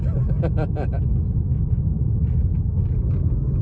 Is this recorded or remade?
recorded